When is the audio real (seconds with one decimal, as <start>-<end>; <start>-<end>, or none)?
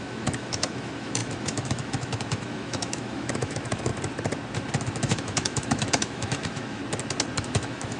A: 3.9-5.0; 6.8-7.4